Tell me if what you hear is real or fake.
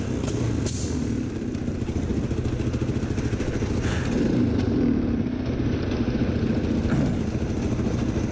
real